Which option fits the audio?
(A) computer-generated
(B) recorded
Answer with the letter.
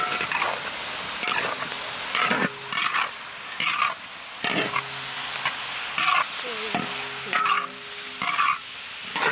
B